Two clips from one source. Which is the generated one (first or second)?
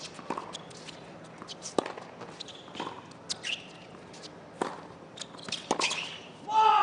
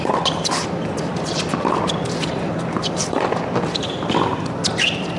second